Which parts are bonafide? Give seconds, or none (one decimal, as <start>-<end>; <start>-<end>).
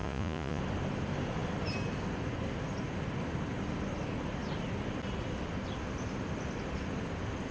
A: 0.6-7.5